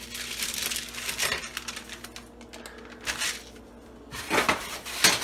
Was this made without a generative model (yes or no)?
yes